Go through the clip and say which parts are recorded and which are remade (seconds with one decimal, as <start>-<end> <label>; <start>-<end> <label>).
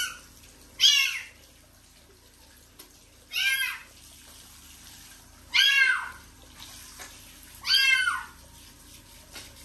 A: 0.0-9.6 recorded